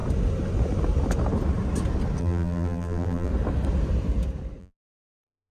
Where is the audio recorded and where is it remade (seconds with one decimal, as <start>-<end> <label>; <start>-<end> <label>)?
0.0-2.2 recorded; 2.2-3.3 remade; 3.3-4.6 recorded; 4.6-5.5 remade